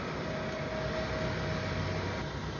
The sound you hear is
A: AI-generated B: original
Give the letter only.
B